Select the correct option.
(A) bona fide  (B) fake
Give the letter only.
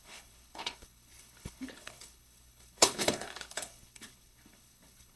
B